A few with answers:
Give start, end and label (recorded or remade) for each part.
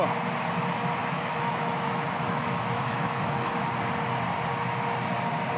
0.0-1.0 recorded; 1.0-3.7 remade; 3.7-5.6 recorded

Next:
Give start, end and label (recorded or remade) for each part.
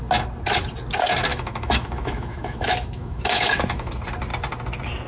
0.0-1.3 recorded; 1.3-3.9 remade; 3.9-5.1 recorded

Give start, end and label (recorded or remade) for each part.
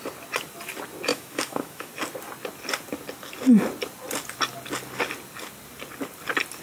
0.0-1.1 recorded; 1.1-1.9 remade; 1.9-6.6 recorded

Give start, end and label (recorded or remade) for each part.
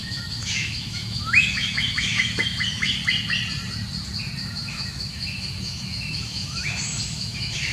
0.0-3.0 remade; 3.0-4.4 recorded; 4.4-7.7 remade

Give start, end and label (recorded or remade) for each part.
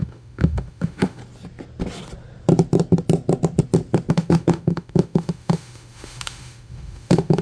0.0-1.2 remade; 1.2-4.1 recorded; 4.1-7.4 remade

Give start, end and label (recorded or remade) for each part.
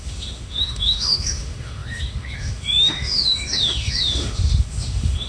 0.0-5.3 remade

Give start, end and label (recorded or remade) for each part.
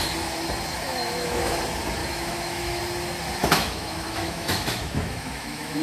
0.0-0.9 recorded; 0.9-1.6 remade; 1.6-2.0 recorded; 2.0-2.8 remade; 2.8-3.4 recorded; 3.4-5.8 remade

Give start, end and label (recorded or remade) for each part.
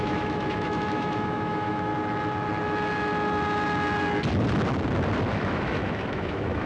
0.0-1.9 remade; 1.9-5.3 recorded; 5.3-6.7 remade